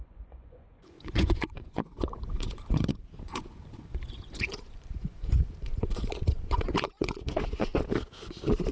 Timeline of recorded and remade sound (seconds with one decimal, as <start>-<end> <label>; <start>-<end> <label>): 0.0-7.7 remade; 7.7-8.7 recorded